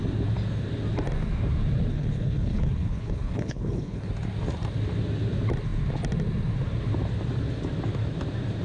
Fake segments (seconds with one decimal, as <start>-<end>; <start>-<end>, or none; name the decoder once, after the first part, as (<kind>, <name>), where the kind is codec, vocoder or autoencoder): 1.9-4.1 (codec, HILCodec)